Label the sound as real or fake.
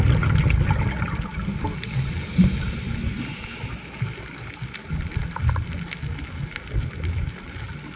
real